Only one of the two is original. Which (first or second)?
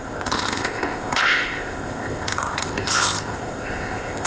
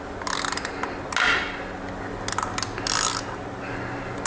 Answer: second